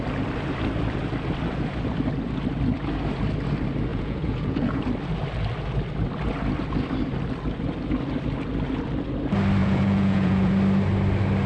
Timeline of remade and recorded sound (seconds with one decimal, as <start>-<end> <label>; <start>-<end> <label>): 0.0-3.9 recorded; 3.9-4.8 remade; 4.8-9.6 recorded; 9.6-10.5 remade; 10.5-11.5 recorded